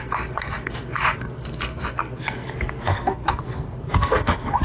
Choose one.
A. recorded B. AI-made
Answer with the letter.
B